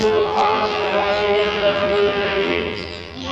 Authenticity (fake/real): fake